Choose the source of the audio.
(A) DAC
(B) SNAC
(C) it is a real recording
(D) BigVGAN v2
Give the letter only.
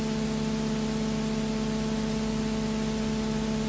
C